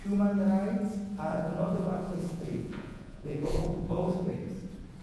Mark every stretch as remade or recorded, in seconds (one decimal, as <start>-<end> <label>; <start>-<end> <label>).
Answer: 0.0-1.3 recorded; 1.3-4.3 remade; 4.3-5.0 recorded